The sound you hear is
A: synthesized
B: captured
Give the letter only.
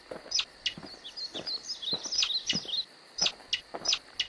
B